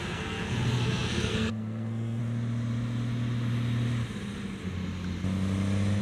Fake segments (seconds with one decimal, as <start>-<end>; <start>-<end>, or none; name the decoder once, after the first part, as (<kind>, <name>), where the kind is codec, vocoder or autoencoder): 0.0-2.2 (codec, SNAC)